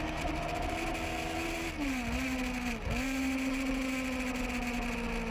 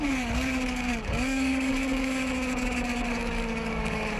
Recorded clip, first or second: first